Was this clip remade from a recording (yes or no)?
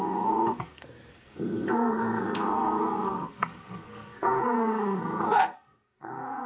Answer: yes